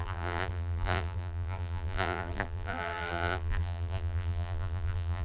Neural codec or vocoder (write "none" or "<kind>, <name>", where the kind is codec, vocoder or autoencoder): vocoder, BigVGAN v2